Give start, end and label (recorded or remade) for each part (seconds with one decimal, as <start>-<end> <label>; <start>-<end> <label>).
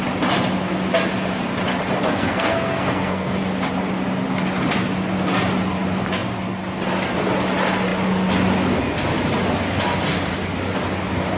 0.0-2.1 recorded; 2.1-3.4 remade; 3.4-11.4 recorded